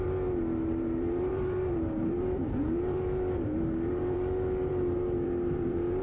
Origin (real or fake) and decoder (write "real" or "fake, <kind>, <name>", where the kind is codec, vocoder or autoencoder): fake, vocoder, BigVGAN v2